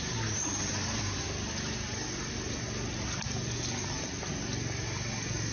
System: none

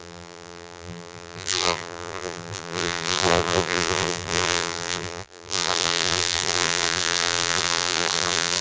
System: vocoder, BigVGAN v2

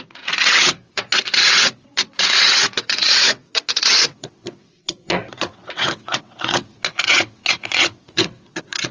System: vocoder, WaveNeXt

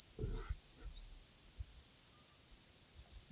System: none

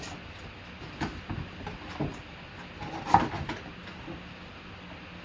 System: none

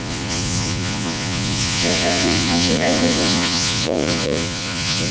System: vocoder, Vocos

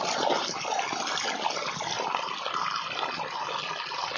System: none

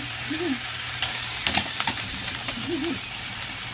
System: vocoder, BigVGAN v2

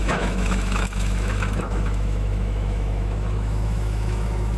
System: autoencoder, DAC-VAE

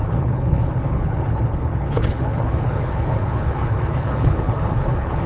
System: codec, HILCodec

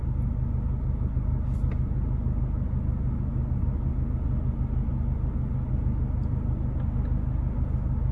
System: none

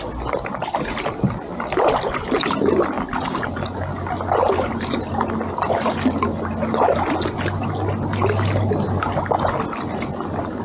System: none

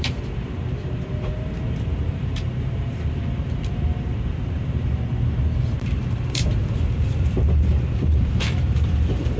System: vocoder, BigVGAN v2